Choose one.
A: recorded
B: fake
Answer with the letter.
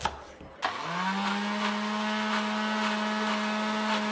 A